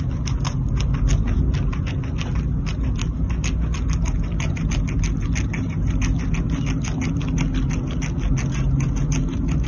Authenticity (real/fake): real